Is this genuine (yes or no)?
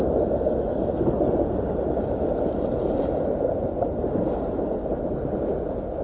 yes